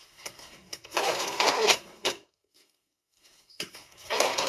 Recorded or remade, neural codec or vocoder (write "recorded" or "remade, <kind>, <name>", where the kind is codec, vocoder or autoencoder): remade, codec, SNAC